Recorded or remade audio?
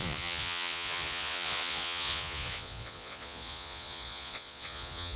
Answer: remade